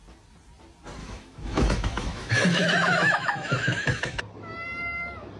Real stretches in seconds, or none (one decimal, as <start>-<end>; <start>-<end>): 0.0-1.0; 4.2-5.4

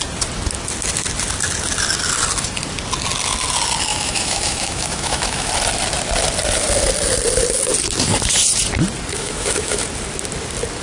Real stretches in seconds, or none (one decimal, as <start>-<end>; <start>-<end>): 0.0-3.9; 5.5-9.1; 9.8-10.8

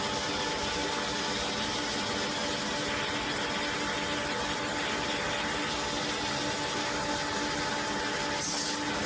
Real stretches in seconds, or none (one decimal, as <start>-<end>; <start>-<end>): 0.0-9.1

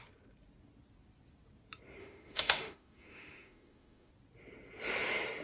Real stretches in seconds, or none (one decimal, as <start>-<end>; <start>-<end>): 0.0-2.0; 4.1-5.4

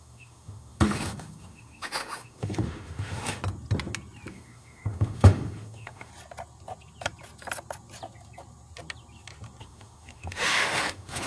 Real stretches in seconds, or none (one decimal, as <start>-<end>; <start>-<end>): 3.4-4.3; 6.1-9.6